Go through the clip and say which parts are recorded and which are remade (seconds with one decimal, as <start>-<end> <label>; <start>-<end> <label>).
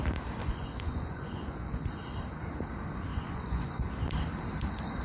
0.0-0.4 recorded; 0.4-1.9 remade; 1.9-3.1 recorded; 3.1-3.9 remade; 3.9-5.0 recorded